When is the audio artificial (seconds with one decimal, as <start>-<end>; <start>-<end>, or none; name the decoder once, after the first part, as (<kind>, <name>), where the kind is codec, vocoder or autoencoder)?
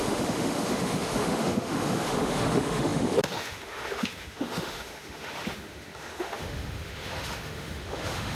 0.0-8.3 (autoencoder, DAC-VAE)